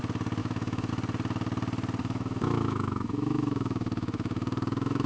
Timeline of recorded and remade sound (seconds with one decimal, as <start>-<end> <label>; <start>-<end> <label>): 0.0-0.4 recorded; 0.4-0.9 remade; 0.9-2.0 recorded; 2.0-5.1 remade

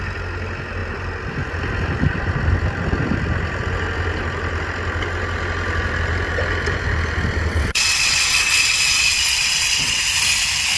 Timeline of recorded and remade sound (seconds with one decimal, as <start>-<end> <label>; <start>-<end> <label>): 0.0-7.5 recorded; 7.5-10.0 remade; 10.0-10.8 recorded